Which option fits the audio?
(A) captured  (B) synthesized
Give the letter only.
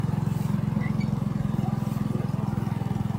A